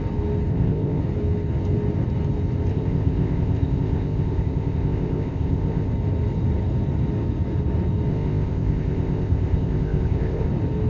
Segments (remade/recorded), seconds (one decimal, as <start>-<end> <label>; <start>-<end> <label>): 0.0-0.5 recorded; 0.5-1.0 remade; 1.0-2.7 recorded; 2.7-5.9 remade; 5.9-8.1 recorded; 8.1-10.5 remade; 10.5-10.9 recorded